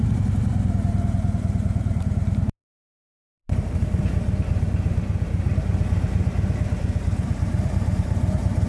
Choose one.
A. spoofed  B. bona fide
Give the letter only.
A